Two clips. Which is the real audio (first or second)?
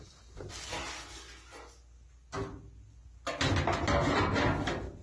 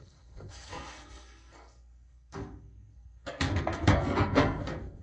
first